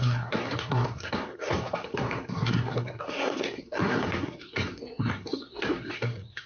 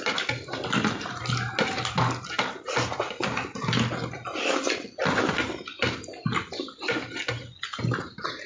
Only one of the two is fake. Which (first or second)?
first